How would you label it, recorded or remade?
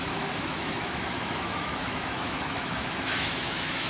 remade